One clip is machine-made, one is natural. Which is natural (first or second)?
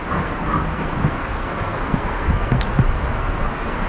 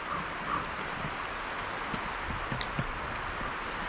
second